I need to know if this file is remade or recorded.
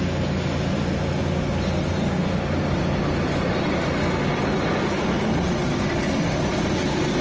recorded